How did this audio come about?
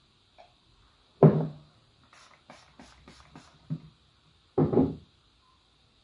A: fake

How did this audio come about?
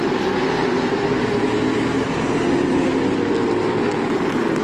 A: real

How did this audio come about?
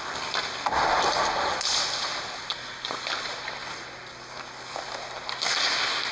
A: real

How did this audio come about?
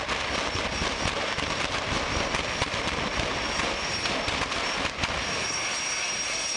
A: real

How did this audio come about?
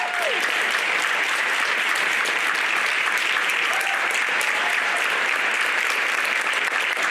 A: fake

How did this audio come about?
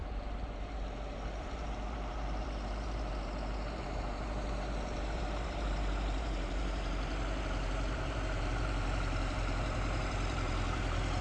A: fake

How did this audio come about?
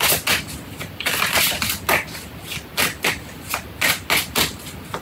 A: real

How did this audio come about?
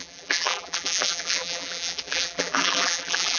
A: fake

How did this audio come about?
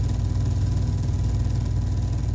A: real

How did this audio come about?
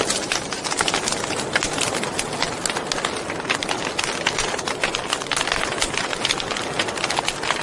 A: real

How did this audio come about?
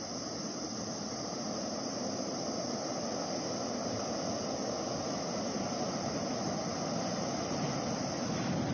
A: real